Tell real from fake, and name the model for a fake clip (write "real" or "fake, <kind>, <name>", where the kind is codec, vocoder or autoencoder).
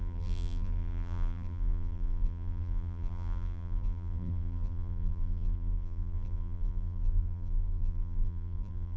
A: fake, vocoder, BigVGAN v2